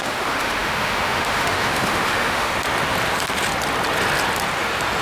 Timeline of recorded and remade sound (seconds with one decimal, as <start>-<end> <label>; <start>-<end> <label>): 0.0-2.5 remade; 2.5-5.0 recorded